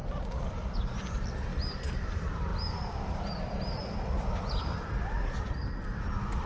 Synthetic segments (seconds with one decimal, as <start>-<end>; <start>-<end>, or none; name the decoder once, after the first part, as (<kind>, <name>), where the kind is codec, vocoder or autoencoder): 0.0-0.8 (vocoder, BigVGAN v2); 2.5-4.8